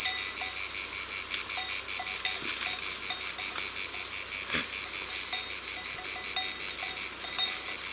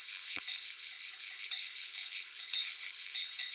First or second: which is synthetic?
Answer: second